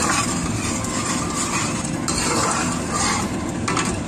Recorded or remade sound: recorded